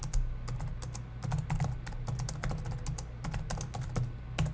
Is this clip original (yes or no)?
yes